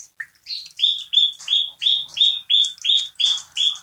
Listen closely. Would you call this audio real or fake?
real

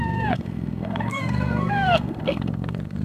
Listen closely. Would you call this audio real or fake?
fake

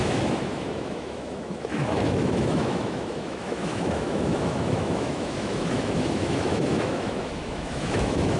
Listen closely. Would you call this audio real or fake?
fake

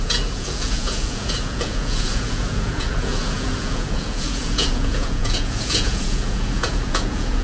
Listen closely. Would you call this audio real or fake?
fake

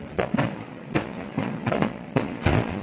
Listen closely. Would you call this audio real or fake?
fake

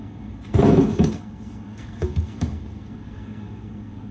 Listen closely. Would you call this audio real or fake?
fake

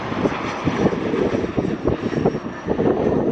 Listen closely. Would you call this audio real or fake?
real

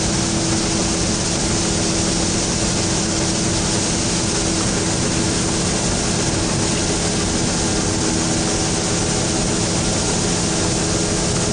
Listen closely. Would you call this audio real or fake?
real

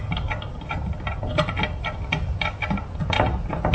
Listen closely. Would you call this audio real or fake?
real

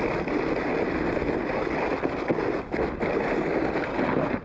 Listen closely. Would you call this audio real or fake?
real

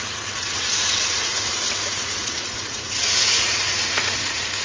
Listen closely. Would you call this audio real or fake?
fake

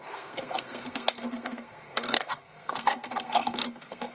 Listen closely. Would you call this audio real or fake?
fake